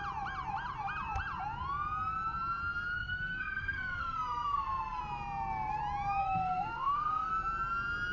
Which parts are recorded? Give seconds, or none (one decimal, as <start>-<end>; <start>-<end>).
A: 0.0-3.0; 5.0-6.2; 7.3-8.1